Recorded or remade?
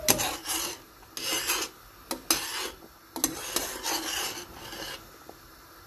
recorded